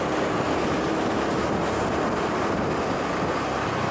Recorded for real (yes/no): yes